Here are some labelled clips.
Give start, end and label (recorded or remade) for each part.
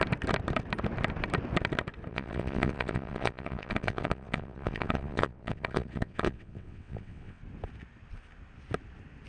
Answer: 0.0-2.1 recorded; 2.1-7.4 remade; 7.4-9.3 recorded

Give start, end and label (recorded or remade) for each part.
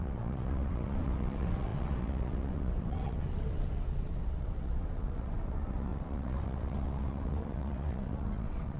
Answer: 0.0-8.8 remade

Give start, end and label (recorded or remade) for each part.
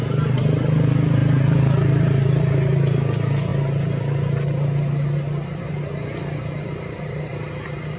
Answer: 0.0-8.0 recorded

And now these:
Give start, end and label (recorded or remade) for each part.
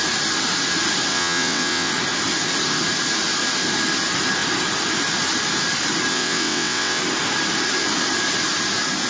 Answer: 0.0-1.1 recorded; 1.1-1.9 remade; 1.9-6.1 recorded; 6.1-7.0 remade; 7.0-9.1 recorded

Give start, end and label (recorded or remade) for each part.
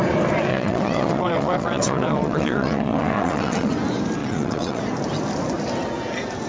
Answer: 0.0-0.5 recorded; 0.5-3.7 remade; 3.7-4.2 recorded; 4.2-4.8 remade; 4.8-6.5 recorded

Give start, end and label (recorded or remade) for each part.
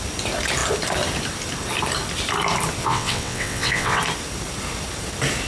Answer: 0.0-2.8 recorded; 2.8-4.0 remade; 4.0-5.5 recorded